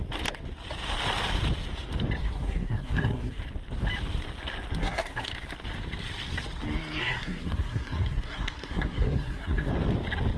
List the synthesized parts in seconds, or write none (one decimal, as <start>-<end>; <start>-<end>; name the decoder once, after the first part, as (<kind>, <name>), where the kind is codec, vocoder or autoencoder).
2.2-3.4 (codec, SNAC); 4.8-5.3; 7.0-9.7